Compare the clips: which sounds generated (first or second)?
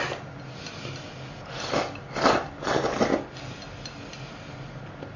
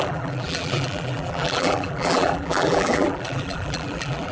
second